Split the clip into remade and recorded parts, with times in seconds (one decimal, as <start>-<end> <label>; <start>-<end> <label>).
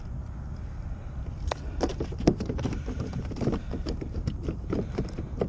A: 0.0-1.0 recorded; 1.0-1.5 remade; 1.5-1.9 recorded; 1.9-5.5 remade